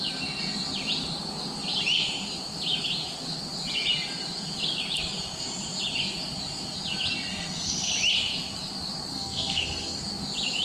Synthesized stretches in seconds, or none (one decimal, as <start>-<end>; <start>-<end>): 7.3-7.9; 9.1-10.0